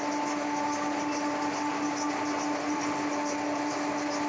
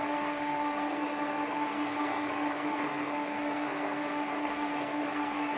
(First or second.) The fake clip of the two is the second